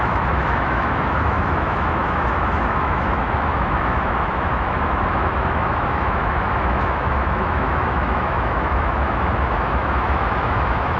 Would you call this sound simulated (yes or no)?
yes